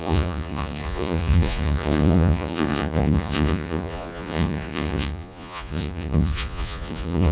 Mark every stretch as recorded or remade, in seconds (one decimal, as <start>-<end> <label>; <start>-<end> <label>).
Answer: 0.0-7.3 remade